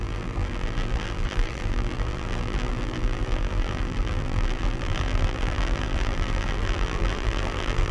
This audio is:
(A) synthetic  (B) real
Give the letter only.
A